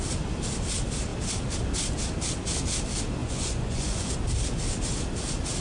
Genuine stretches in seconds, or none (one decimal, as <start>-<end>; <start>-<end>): 0.0-3.2; 4.1-5.6